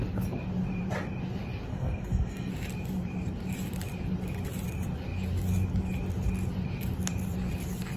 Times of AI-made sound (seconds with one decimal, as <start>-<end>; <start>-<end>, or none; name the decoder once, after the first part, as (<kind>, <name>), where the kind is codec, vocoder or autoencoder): 1.7-2.5 (codec, SNAC)

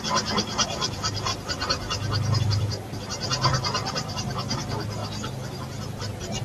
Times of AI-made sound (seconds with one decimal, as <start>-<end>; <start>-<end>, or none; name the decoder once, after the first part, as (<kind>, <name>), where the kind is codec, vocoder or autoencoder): 0.0-1.3 (vocoder, BigVGAN v2); 2.4-5.0

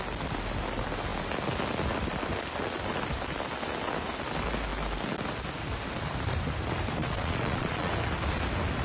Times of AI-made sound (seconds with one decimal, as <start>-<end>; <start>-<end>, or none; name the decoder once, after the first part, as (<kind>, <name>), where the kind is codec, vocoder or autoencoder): 7.0-7.9 (vocoder, Vocos)